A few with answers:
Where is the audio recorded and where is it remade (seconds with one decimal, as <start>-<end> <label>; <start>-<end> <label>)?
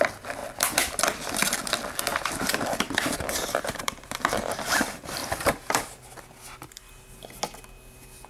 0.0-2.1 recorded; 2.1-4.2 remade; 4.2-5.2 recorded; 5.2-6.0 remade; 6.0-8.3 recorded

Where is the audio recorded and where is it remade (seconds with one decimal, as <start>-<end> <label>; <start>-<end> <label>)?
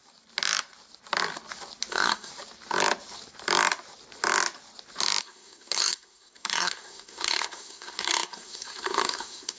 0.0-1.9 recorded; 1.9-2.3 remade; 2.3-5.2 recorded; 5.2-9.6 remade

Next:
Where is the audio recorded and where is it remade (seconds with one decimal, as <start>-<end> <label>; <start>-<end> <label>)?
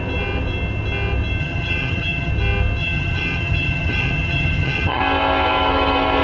0.0-1.4 recorded; 1.4-2.3 remade; 2.3-2.8 recorded; 2.8-5.0 remade; 5.0-6.2 recorded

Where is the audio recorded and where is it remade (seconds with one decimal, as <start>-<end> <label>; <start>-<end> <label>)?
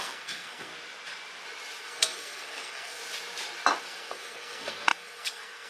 0.0-0.7 remade; 0.7-1.8 recorded; 1.8-3.0 remade; 3.0-3.8 recorded; 3.8-5.7 remade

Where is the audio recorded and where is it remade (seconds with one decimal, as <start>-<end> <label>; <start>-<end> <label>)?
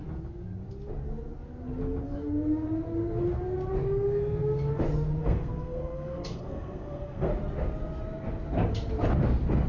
0.0-5.2 recorded; 5.2-7.3 remade; 7.3-9.7 recorded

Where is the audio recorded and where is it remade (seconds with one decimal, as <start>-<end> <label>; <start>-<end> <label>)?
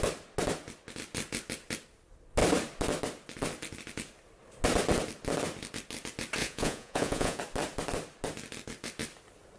0.0-6.4 recorded; 6.4-7.4 remade; 7.4-9.6 recorded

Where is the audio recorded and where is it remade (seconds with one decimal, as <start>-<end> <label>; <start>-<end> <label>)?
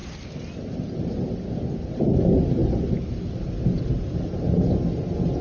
0.0-5.4 recorded